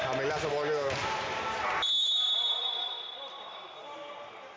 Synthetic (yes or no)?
no